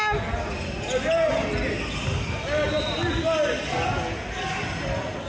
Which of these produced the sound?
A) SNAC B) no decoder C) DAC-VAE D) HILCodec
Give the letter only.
B